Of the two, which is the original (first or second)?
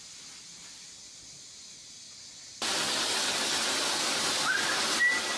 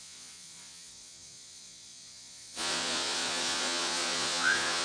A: first